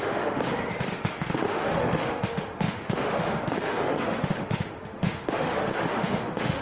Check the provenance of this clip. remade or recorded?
remade